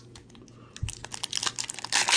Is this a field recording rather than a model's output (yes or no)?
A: yes